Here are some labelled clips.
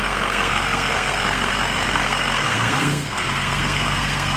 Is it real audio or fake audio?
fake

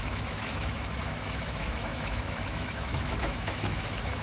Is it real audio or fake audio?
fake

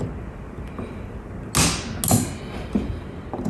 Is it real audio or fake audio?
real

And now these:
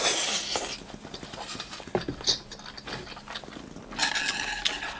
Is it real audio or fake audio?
real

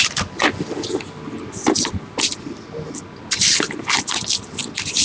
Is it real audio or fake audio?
real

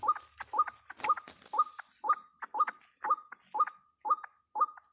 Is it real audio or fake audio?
real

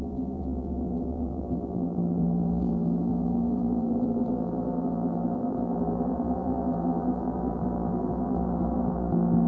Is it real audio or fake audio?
fake